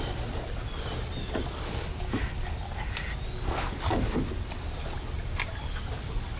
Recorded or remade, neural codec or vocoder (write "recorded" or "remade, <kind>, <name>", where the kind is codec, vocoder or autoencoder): recorded